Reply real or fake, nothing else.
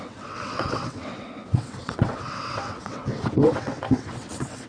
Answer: fake